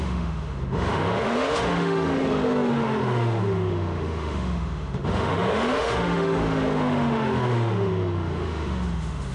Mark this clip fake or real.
fake